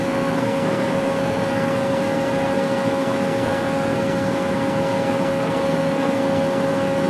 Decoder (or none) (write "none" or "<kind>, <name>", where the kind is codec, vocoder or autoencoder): codec, SNAC